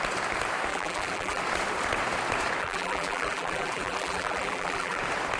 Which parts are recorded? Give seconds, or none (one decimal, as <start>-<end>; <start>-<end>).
0.0-0.7; 1.4-2.6; 5.0-5.4

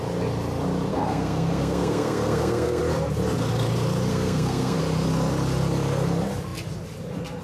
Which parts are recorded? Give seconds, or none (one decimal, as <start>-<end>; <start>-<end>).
0.0-0.9; 2.8-4.1; 4.8-7.4

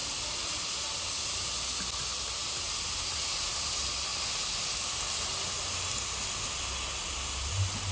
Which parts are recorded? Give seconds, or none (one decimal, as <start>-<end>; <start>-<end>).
0.0-7.9

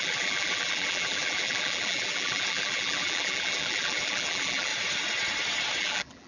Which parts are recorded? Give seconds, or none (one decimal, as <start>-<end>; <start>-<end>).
4.7-5.8

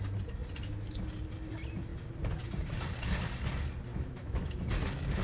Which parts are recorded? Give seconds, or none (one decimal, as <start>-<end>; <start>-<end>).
0.0-3.9; 4.6-5.2

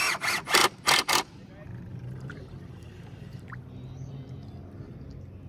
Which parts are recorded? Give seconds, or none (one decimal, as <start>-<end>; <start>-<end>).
0.0-1.9; 3.4-5.5